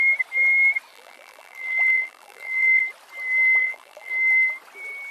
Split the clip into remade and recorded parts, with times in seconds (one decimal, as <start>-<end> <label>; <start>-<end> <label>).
0.0-0.9 recorded; 0.9-2.8 remade; 2.8-3.6 recorded; 3.6-4.1 remade; 4.1-5.1 recorded